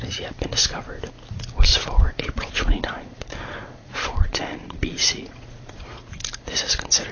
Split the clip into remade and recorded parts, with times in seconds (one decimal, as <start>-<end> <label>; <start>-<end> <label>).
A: 0.0-1.7 recorded; 1.7-6.0 remade; 6.0-7.1 recorded

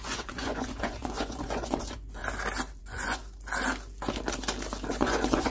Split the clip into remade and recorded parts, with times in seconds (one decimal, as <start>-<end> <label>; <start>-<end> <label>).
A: 0.0-2.2 remade; 2.2-2.8 recorded; 2.8-3.2 remade; 3.2-4.9 recorded; 4.9-5.5 remade

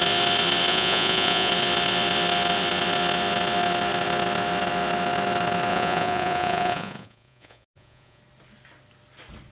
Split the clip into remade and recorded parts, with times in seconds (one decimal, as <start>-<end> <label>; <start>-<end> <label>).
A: 0.0-0.7 recorded; 0.7-1.5 remade; 1.5-5.7 recorded; 5.7-8.2 remade; 8.2-9.5 recorded

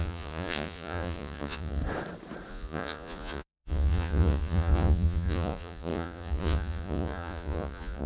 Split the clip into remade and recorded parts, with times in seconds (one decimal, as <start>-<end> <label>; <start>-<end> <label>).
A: 0.0-1.8 remade; 1.8-2.5 recorded; 2.5-8.1 remade

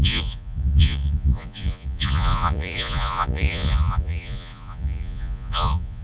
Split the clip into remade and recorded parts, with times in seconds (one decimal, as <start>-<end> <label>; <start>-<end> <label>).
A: 0.0-6.0 remade

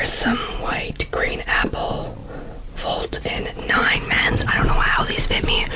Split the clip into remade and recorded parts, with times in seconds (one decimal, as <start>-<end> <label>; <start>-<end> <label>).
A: 0.0-0.5 recorded; 0.5-1.7 remade; 1.7-2.2 recorded; 2.2-4.4 remade; 4.4-5.8 recorded

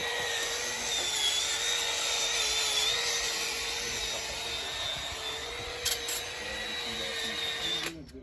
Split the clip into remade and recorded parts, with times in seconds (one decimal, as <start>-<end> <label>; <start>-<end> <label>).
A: 0.0-0.9 remade; 0.9-1.6 recorded; 1.6-2.2 remade; 2.2-2.9 recorded; 2.9-4.0 remade; 4.0-5.4 recorded; 5.4-6.5 remade; 6.5-8.2 recorded